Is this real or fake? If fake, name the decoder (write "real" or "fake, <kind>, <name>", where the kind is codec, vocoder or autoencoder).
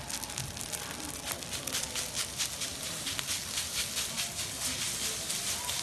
real